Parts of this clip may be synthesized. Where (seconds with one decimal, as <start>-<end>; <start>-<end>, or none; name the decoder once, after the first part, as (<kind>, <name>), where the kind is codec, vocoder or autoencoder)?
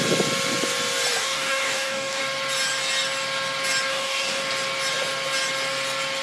1.2-2.2 (codec, DAC); 3.9-4.4